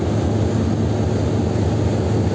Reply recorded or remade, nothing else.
recorded